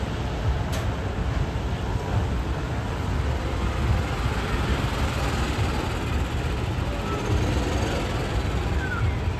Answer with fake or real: real